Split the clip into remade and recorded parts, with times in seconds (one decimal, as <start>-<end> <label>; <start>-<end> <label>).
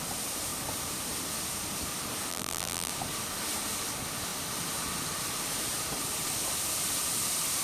0.0-2.3 recorded; 2.3-2.9 remade; 2.9-7.6 recorded